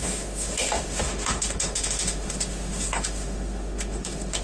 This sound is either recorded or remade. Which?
remade